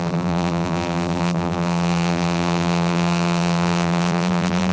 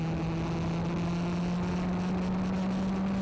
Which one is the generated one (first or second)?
first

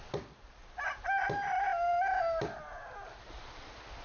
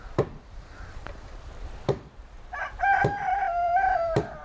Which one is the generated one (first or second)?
second